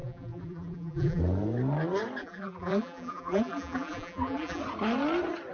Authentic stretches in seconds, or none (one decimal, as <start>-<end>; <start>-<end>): 1.2-2.2; 4.6-5.5